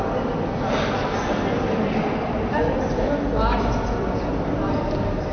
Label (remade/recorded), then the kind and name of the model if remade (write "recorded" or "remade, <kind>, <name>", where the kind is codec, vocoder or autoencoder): recorded